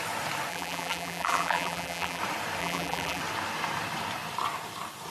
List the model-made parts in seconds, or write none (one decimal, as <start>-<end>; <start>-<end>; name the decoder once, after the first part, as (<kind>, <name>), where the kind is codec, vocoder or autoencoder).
0.5-2.2 (vocoder, BigVGAN v2); 2.6-3.2